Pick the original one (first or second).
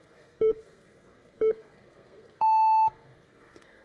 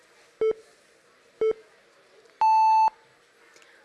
second